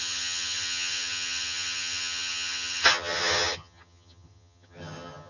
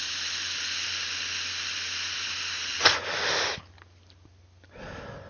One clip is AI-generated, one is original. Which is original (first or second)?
second